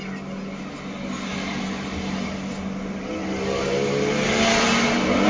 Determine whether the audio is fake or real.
real